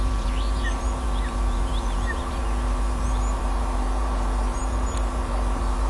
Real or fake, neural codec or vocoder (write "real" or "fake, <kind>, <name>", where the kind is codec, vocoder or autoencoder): fake, vocoder, BigVGAN v2